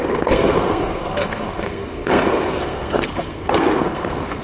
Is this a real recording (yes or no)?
no